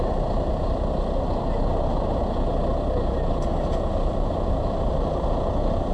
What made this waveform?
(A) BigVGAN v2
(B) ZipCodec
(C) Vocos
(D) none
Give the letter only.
D